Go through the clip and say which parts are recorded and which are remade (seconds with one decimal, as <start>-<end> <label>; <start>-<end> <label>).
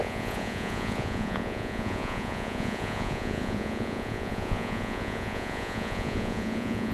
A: 0.0-6.9 remade